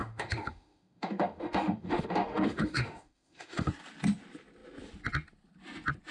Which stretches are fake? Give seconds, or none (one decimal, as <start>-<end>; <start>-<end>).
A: 0.0-3.7